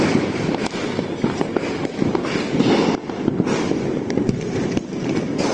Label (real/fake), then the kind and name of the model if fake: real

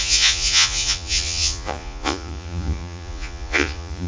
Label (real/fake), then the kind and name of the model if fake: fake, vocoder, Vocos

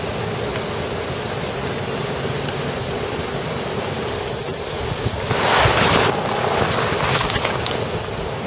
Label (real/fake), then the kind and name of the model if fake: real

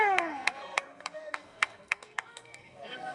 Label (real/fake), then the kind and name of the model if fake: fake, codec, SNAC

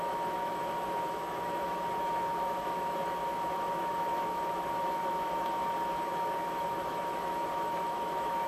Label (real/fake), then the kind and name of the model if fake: fake, autoencoder, DAC-VAE